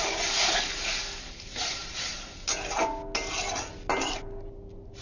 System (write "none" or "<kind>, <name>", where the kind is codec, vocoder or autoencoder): none